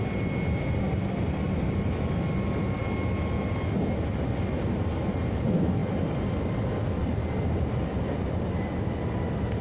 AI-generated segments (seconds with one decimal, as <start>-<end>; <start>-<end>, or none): none